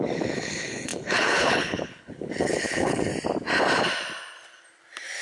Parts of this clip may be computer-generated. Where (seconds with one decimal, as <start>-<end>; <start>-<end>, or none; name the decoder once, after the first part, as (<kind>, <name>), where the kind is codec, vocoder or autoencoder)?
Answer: 0.0-3.1 (codec, HILCodec)